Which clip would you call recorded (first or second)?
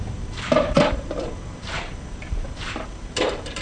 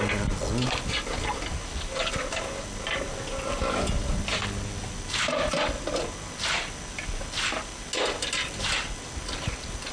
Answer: second